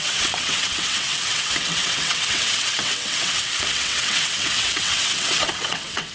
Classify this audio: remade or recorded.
remade